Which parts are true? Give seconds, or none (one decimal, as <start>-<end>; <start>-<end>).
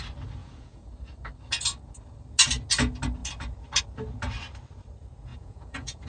0.0-0.4; 0.9-5.3